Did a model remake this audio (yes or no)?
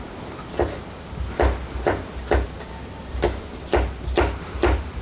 no